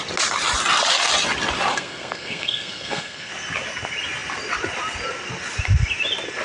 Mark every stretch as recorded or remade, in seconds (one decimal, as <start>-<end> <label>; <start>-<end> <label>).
0.0-1.7 recorded; 1.7-3.3 remade; 3.3-6.4 recorded